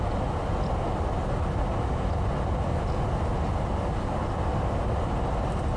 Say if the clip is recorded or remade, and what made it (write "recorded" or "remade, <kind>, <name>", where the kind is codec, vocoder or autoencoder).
recorded